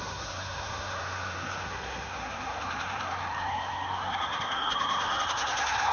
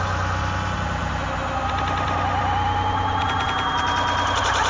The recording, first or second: second